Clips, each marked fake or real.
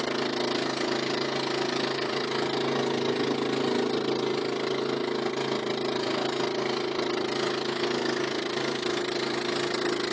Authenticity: real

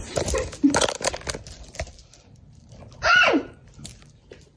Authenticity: real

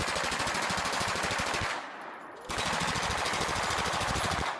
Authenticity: real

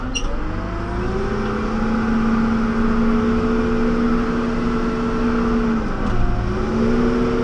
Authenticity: real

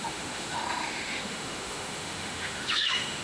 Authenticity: fake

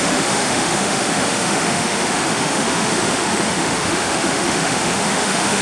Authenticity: fake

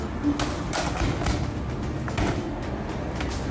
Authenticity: real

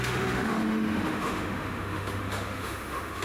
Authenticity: fake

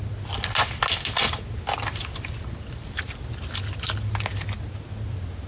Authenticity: real